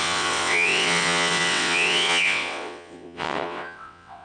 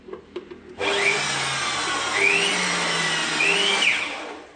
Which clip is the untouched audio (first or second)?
second